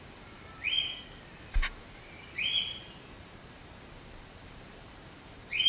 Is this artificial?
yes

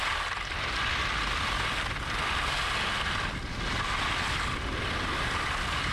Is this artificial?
no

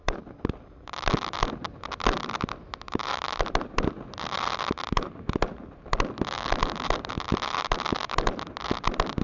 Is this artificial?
no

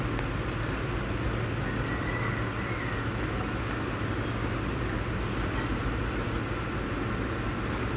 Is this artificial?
no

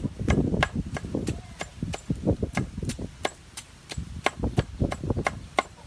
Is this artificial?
yes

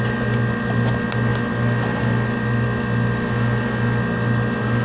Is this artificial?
no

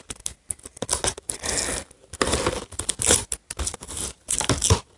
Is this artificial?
no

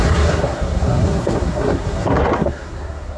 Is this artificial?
yes